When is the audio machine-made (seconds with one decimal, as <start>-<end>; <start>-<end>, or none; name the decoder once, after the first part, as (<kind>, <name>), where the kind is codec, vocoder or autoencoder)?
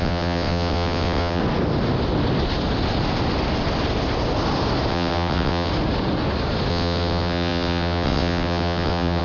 0.0-1.4 (vocoder, WaveNeXt); 4.9-5.7; 6.7-9.2